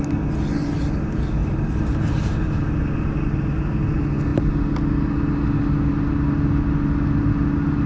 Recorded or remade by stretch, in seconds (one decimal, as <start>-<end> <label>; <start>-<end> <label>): 0.0-7.9 recorded